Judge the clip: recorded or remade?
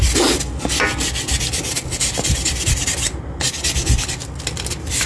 recorded